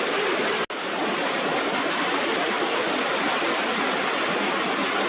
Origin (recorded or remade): recorded